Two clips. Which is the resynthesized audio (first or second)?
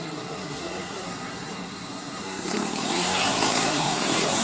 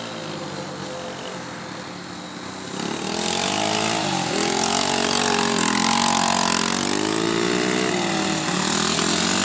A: first